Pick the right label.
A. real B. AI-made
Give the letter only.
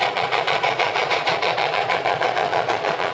B